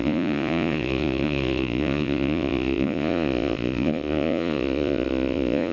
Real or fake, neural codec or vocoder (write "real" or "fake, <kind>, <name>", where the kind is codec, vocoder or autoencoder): fake, vocoder, Vocos